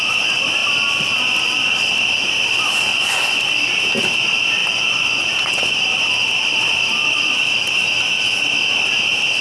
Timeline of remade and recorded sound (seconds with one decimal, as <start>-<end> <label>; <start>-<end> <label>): 0.0-2.9 recorded; 2.9-3.5 remade; 3.5-4.6 recorded; 4.6-5.8 remade; 5.8-9.4 recorded